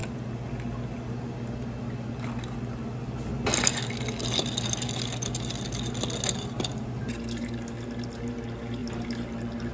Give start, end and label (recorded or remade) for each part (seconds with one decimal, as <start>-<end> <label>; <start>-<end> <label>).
0.0-9.7 recorded